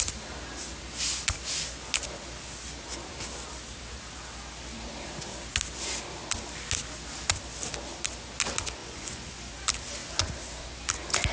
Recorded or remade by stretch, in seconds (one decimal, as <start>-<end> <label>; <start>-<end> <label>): 0.0-8.8 recorded; 8.8-9.5 remade; 9.5-11.3 recorded